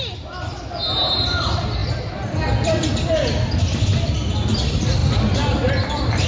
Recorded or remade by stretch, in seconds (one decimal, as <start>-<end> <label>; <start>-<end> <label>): 0.0-5.0 remade; 5.0-5.7 recorded; 5.7-6.3 remade